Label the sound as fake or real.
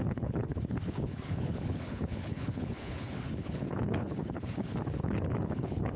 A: fake